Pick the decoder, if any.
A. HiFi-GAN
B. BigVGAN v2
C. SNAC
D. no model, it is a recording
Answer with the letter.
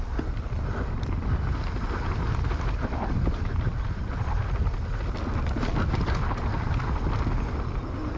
D